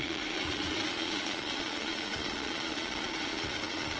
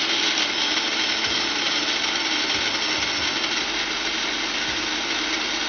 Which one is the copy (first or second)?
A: first